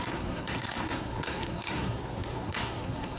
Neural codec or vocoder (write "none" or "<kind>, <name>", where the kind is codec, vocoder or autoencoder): codec, SNAC